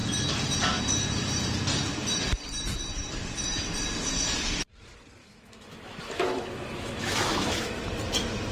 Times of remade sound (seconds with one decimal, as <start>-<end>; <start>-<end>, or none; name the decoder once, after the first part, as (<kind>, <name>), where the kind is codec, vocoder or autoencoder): 5.2-7.8 (autoencoder, DAC-VAE)